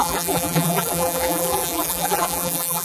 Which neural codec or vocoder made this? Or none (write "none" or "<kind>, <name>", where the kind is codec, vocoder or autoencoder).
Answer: vocoder, BigVGAN v2